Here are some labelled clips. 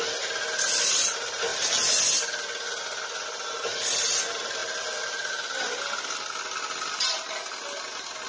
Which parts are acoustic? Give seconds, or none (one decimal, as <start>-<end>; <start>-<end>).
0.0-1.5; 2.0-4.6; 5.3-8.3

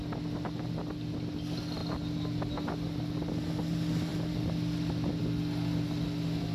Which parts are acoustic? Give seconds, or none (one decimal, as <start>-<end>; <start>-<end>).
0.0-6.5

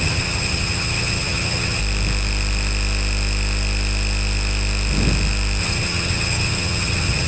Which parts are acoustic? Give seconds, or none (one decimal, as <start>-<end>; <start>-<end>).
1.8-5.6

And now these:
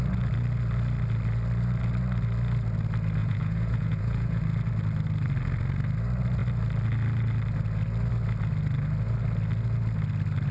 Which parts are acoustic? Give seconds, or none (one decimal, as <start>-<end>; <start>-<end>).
0.0-3.2; 4.4-10.5